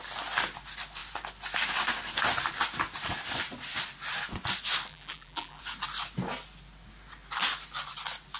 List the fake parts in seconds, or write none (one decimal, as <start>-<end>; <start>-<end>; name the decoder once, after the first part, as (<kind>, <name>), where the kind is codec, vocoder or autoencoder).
4.9-5.6 (vocoder, BigVGAN v2)